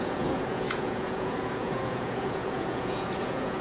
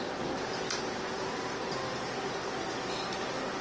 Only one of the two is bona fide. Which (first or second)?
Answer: second